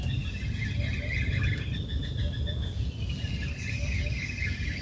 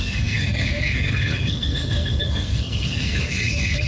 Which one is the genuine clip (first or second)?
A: first